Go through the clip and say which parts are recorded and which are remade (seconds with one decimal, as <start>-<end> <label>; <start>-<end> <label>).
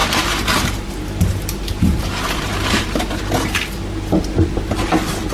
0.0-3.2 remade; 3.2-5.3 recorded